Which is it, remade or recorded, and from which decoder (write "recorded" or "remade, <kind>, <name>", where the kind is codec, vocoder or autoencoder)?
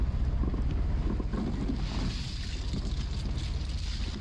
recorded